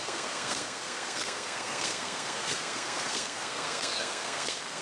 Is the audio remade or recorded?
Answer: remade